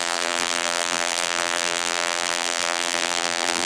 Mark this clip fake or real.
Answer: fake